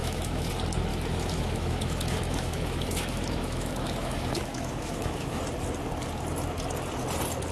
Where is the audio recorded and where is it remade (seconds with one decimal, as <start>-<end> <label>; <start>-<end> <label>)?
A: 0.0-0.5 remade; 0.5-0.9 recorded; 0.9-5.4 remade; 5.4-7.5 recorded